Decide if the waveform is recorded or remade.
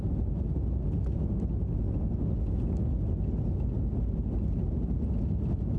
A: recorded